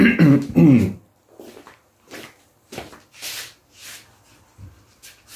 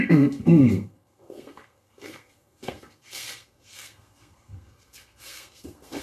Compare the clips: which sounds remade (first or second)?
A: second